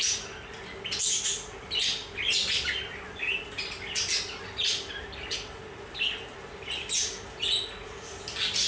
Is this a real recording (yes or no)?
yes